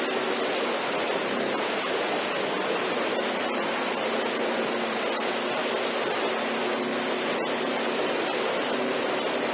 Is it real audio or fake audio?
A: fake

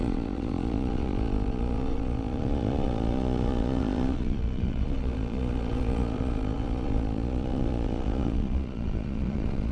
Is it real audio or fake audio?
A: fake